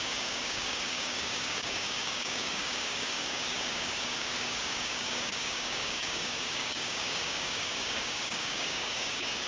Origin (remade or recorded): remade